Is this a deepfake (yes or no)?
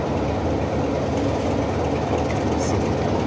no